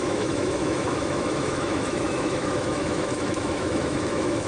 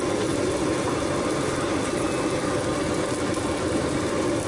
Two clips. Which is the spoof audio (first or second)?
first